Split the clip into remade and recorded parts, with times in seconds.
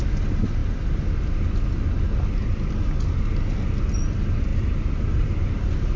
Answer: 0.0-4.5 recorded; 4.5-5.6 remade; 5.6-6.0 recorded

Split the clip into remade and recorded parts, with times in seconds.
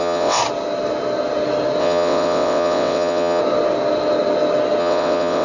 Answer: 0.0-0.4 remade; 0.4-1.8 recorded; 1.8-3.4 remade; 3.4-4.8 recorded; 4.8-5.4 remade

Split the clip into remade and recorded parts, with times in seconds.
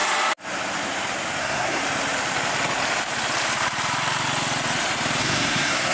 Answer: 0.0-1.4 recorded; 1.4-1.8 remade; 1.8-5.2 recorded; 5.2-5.9 remade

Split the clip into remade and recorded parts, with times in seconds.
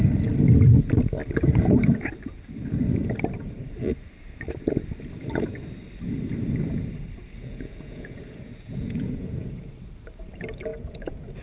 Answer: 0.0-7.5 recorded; 7.5-9.7 remade; 9.7-10.7 recorded; 10.7-11.4 remade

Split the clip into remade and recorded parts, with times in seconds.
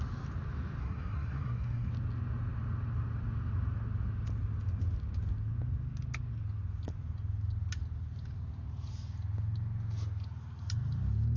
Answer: 0.0-0.8 recorded; 0.8-1.9 remade; 1.9-11.4 recorded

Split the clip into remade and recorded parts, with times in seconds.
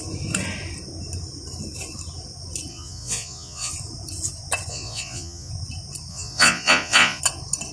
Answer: 0.0-2.7 recorded; 2.7-3.7 remade; 3.7-4.7 recorded; 4.7-5.5 remade; 5.5-6.1 recorded; 6.1-7.2 remade; 7.2-7.7 recorded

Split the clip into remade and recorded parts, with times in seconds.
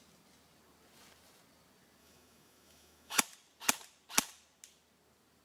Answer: 0.0-2.0 recorded; 2.0-3.2 remade; 3.2-5.4 recorded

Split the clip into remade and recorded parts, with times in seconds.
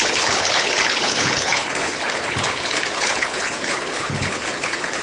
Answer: 0.0-5.0 remade